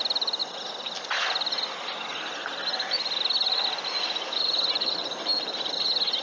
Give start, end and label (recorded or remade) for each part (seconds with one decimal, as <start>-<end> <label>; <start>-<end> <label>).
0.0-6.2 recorded